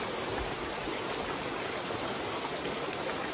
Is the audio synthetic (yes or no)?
no